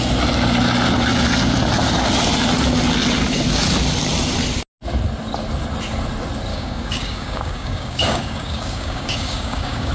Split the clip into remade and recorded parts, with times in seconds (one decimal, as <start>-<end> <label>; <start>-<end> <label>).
0.0-6.5 recorded; 6.5-9.9 remade